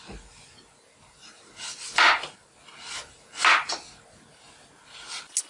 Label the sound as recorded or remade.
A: recorded